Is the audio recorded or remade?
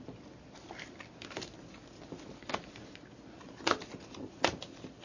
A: recorded